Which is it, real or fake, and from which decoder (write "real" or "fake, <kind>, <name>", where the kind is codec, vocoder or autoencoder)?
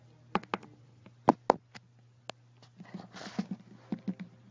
real